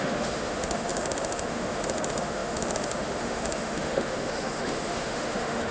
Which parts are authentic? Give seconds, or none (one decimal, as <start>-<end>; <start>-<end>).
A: none